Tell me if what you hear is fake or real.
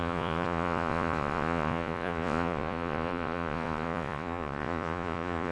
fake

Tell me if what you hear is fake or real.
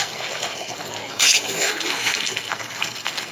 fake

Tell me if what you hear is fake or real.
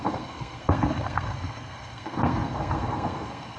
fake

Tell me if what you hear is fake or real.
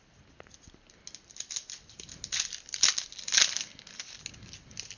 real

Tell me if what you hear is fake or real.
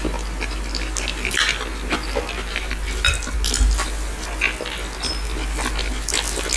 real